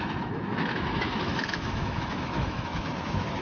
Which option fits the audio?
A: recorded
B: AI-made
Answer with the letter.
B